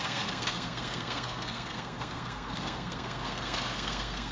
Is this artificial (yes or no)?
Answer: yes